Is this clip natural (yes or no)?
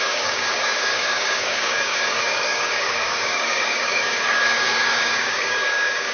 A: no